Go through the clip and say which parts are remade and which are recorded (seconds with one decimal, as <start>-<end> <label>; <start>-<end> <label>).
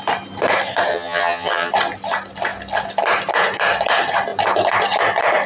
0.0-0.9 recorded; 0.9-1.7 remade; 1.7-5.5 recorded